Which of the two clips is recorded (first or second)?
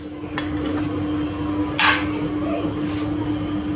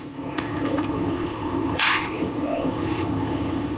first